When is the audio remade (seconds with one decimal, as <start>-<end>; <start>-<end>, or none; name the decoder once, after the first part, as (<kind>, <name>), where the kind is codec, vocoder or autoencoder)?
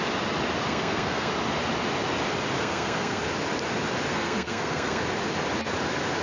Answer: 0.7-1.3 (codec, SNAC); 2.5-3.2; 4.1-5.0